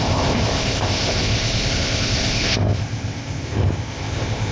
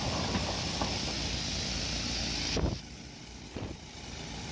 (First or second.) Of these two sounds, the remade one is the first